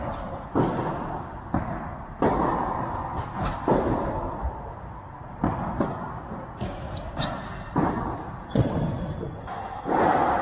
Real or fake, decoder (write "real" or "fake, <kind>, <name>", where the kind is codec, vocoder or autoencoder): real